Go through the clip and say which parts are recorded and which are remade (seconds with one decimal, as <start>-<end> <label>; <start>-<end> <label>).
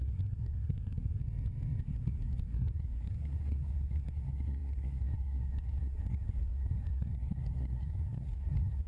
0.0-1.2 remade; 1.2-1.8 recorded; 1.8-8.9 remade